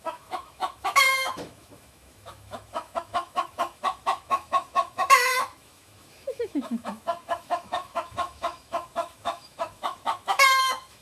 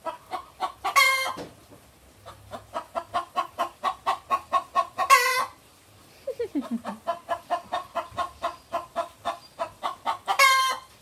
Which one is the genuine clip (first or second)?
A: second